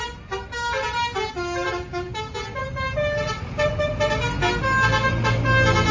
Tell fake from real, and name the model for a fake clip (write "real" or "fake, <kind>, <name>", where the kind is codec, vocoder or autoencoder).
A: real